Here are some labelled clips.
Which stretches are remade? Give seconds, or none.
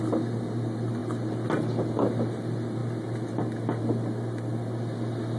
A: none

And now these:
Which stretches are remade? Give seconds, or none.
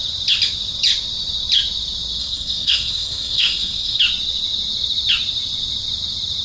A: 2.2-4.0 (codec, SNAC)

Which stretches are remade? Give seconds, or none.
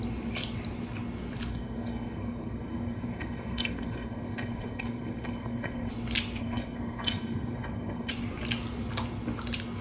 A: 1.5-5.9 (codec, SNAC); 6.4-8.1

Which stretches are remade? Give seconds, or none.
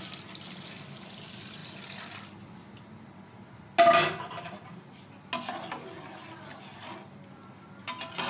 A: none